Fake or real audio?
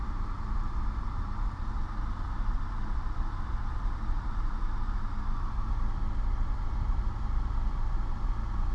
fake